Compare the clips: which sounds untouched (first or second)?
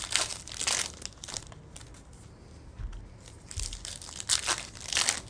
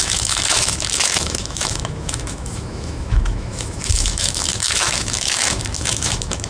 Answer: first